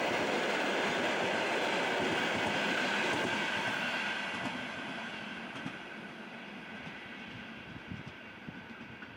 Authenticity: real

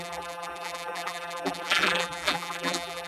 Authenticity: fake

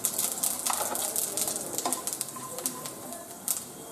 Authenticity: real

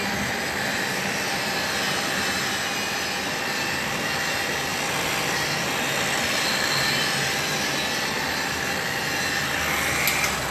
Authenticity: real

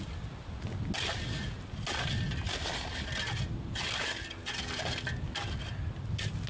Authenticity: real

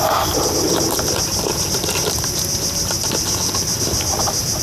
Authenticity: real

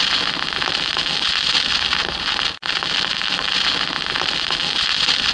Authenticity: real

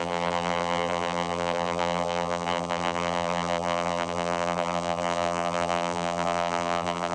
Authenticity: fake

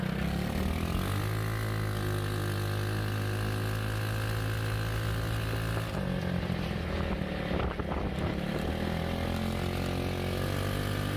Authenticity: real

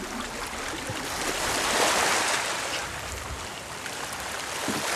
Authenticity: real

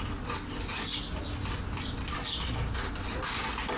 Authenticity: real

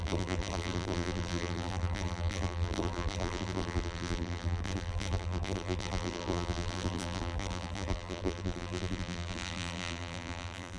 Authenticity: fake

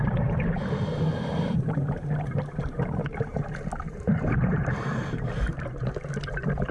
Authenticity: fake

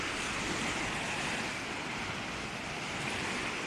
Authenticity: real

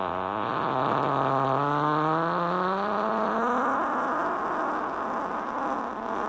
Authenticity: real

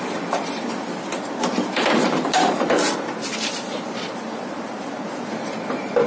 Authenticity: fake